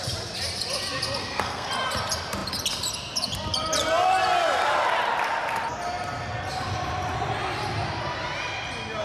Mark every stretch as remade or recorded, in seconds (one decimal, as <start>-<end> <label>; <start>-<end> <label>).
0.0-1.2 recorded; 1.2-1.7 remade; 1.7-9.0 recorded